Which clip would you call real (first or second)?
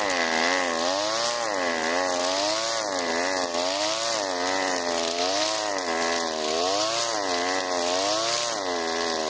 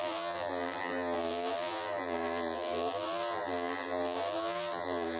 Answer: first